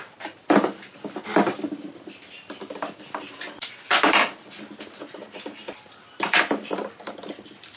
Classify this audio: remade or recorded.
recorded